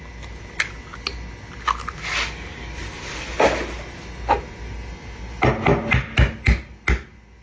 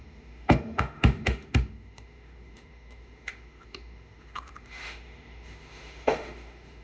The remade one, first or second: second